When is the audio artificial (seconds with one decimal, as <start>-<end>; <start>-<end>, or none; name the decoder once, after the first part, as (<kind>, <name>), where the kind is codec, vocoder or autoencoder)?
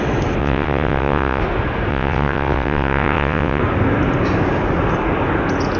0.4-1.4 (vocoder, WaveNeXt); 1.9-3.6